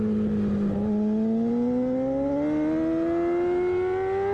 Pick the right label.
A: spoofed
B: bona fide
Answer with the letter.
B